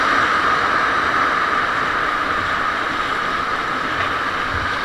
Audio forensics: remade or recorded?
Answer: recorded